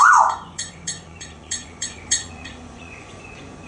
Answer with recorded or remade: remade